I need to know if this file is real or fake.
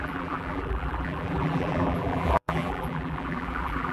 fake